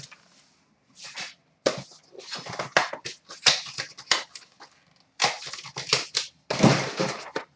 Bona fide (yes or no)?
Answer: yes